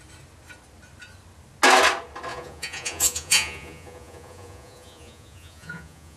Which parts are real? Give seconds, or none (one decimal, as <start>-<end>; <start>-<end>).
0.0-2.3

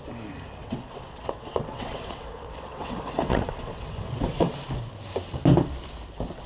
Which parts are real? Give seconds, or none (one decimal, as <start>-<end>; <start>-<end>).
0.0-0.6; 4.5-6.5

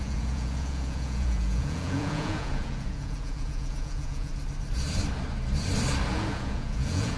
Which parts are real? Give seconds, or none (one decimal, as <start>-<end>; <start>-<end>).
4.3-6.1

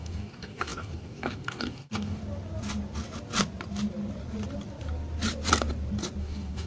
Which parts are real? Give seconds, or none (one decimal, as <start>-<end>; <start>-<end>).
2.2-6.2

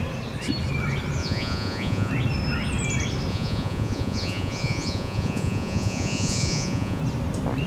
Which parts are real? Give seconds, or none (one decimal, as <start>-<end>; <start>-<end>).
0.0-1.2; 2.1-3.3; 7.0-7.7